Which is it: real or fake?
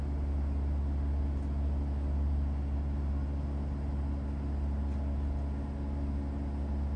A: real